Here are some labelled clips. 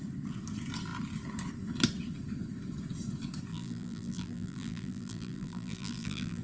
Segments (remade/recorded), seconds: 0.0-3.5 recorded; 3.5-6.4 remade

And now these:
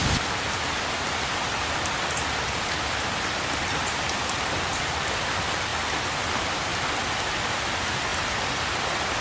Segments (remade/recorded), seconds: 0.0-4.7 recorded; 4.7-5.7 remade; 5.7-6.3 recorded; 6.3-6.7 remade; 6.7-7.5 recorded; 7.5-8.1 remade; 8.1-8.6 recorded; 8.6-9.2 remade